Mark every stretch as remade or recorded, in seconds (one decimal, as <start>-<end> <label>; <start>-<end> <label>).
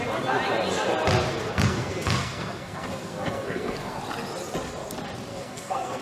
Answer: 0.0-1.3 recorded; 1.3-4.0 remade; 4.0-5.3 recorded; 5.3-6.0 remade